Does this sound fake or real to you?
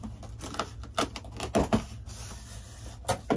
real